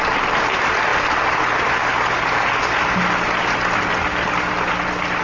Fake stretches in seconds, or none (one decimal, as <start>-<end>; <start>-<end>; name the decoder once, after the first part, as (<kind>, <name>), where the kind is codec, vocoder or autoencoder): none